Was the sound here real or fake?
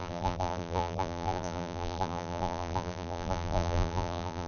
fake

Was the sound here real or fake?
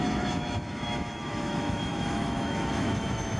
fake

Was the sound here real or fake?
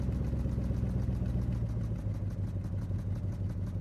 real